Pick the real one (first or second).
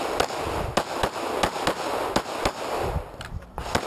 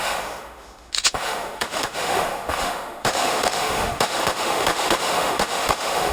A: first